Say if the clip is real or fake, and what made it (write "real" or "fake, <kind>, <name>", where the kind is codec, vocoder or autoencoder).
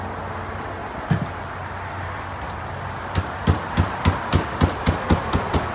real